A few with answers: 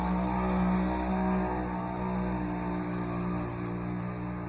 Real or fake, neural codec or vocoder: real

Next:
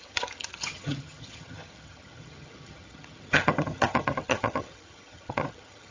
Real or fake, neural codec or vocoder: fake, vocoder, HiFi-GAN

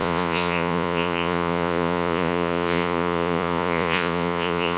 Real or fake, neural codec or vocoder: fake, vocoder, Vocos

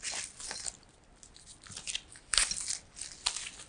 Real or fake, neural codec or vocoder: real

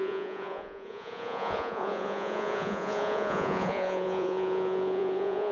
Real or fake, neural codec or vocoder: fake, vocoder, Vocos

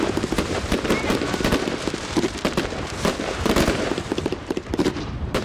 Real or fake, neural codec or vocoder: fake, vocoder, BigVGAN v2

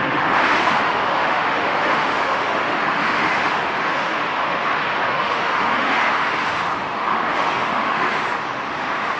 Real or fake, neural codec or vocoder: fake, autoencoder, DAC-VAE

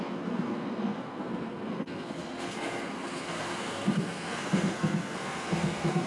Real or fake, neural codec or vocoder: fake, codec, SNAC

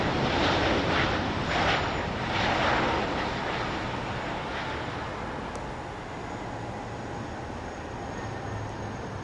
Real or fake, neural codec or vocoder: real